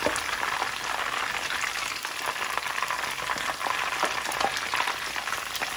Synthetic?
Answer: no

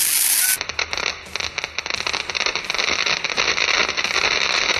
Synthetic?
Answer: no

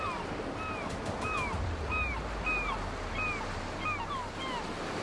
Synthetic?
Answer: no